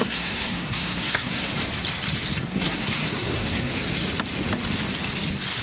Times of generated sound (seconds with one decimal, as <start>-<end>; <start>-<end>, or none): 0.0-1.5; 2.4-3.7